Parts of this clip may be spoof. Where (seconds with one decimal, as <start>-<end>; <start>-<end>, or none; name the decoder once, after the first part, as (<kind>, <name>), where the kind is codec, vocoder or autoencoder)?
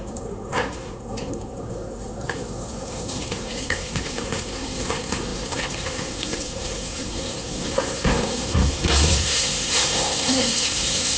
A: 0.0-11.2 (codec, SNAC)